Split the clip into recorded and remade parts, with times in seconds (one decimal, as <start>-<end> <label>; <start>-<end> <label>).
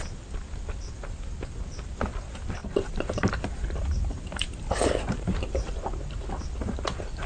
0.0-2.6 recorded; 2.6-5.7 remade; 5.7-7.3 recorded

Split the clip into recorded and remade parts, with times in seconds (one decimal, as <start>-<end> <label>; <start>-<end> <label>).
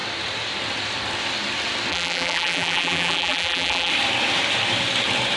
0.0-1.9 recorded; 1.9-3.9 remade; 3.9-5.4 recorded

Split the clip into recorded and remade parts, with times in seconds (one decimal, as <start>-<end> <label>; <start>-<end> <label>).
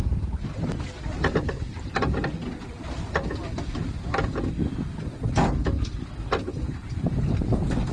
0.0-1.3 recorded; 1.3-7.9 remade